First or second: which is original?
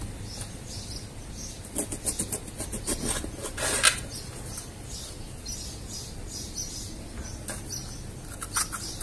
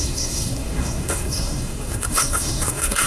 first